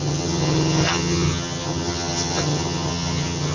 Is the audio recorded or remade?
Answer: remade